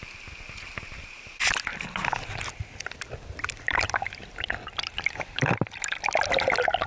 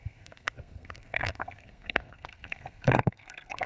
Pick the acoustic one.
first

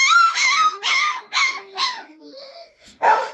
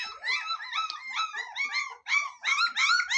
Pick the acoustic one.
second